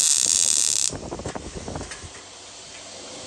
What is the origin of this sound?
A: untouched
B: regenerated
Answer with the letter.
A